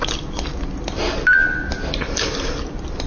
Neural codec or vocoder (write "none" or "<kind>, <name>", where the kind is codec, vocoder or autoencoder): none